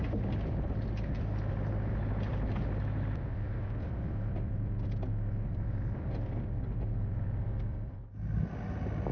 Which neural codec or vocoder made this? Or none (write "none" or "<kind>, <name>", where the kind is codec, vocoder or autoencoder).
none